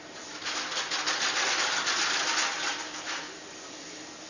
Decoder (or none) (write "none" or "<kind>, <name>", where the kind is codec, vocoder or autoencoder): none